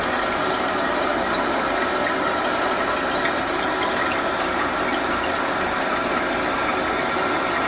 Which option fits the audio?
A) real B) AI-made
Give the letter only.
A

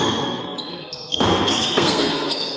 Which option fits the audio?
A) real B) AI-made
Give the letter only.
B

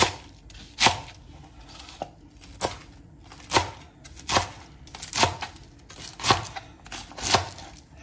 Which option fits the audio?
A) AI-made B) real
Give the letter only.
B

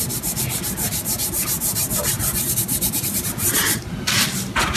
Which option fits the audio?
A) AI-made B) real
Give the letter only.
B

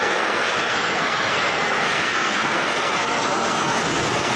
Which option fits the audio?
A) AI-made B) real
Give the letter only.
A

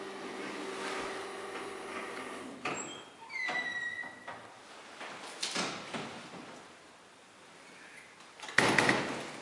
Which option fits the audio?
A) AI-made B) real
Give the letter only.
B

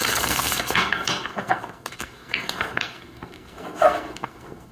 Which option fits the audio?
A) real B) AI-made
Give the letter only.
B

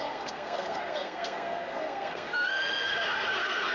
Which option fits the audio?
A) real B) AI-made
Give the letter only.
B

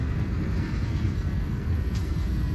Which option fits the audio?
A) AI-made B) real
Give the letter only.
A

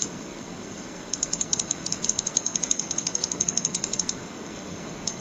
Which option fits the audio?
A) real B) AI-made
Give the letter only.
B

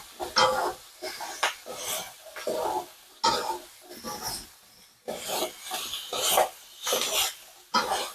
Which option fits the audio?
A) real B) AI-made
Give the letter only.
A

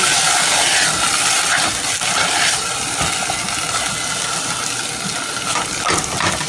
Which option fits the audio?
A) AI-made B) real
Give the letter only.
B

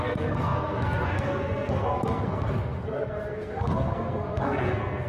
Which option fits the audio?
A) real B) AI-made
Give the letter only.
B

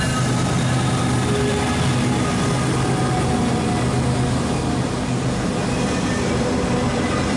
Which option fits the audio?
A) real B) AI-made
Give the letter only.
A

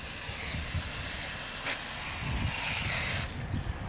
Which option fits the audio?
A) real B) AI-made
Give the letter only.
A